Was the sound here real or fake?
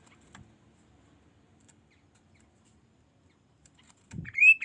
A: fake